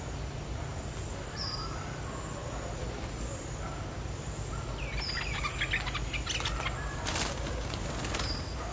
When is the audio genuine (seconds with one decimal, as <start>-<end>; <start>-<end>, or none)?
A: 0.0-8.7